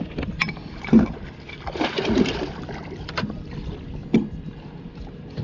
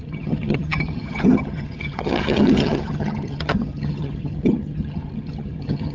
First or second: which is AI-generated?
second